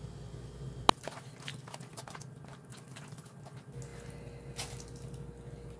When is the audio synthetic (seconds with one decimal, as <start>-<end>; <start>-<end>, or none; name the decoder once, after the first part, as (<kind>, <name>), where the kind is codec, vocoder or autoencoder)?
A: none